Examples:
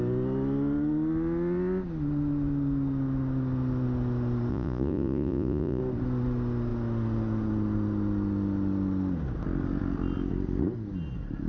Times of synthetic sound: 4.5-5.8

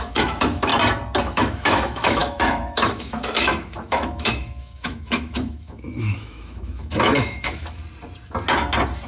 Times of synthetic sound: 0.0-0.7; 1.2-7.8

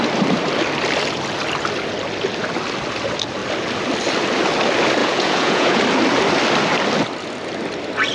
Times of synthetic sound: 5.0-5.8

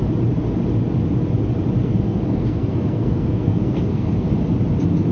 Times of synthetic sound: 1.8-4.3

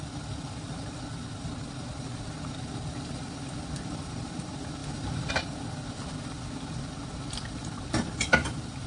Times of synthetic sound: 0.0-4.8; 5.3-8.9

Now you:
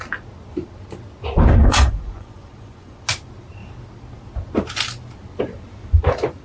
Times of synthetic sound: 1.6-3.0

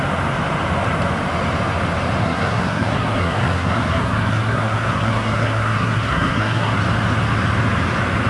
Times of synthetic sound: 2.2-6.8